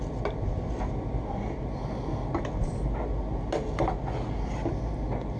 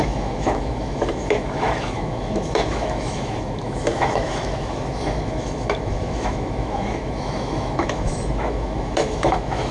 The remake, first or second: second